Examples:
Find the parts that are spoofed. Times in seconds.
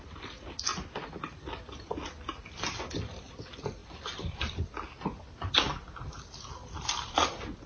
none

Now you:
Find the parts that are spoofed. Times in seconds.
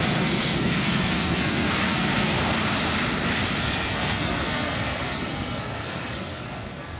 0.0-2.3 (codec, SNAC); 3.6-7.0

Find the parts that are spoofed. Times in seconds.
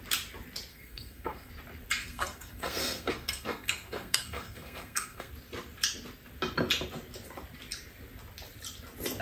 0.7-1.5 (codec, SNAC); 2.0-5.3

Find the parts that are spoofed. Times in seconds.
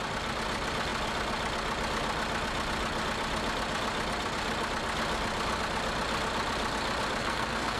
7.2-7.8 (codec, SNAC)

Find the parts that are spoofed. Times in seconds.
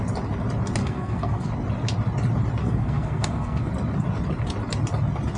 0.8-1.5 (codec, SNAC); 2.6-3.7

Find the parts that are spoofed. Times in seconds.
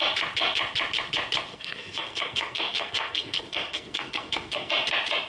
1.5-4.7 (codec, SNAC)